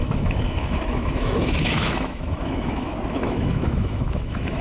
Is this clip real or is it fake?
fake